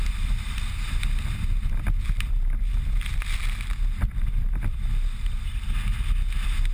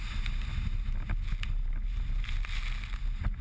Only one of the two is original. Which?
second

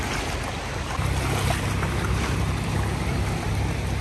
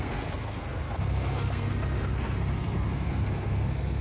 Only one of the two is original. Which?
first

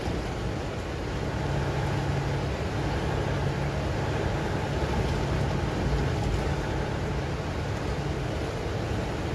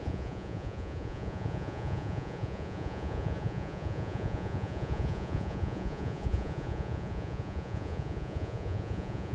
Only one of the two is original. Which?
first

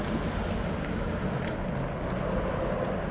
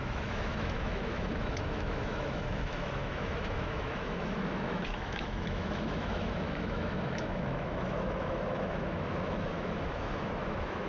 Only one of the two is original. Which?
first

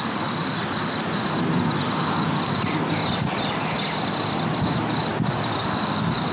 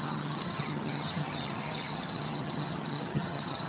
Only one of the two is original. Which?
first